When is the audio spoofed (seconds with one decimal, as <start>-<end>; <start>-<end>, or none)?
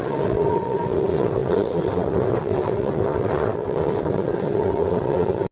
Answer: 0.0-5.5